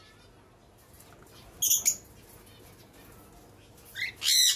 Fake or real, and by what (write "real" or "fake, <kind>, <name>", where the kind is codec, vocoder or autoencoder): real